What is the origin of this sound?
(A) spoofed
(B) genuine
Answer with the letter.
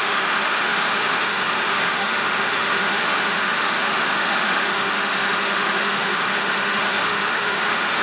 A